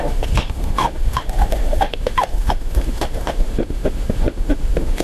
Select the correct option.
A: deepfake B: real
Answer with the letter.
A